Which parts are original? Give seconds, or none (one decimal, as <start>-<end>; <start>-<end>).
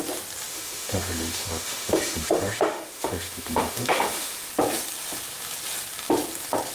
0.0-0.5; 4.5-6.7